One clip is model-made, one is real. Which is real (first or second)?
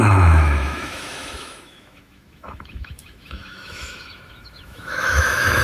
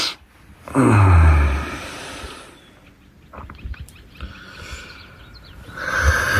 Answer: second